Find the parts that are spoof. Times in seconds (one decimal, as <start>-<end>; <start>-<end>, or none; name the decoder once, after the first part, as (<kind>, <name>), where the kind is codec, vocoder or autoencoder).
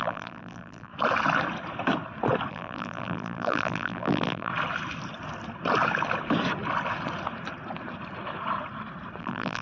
0.0-0.9 (vocoder, BigVGAN v2); 2.5-4.5; 9.2-9.6